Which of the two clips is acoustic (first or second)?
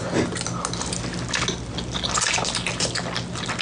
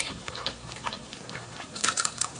first